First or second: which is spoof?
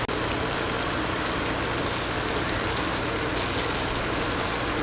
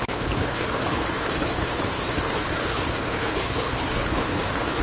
second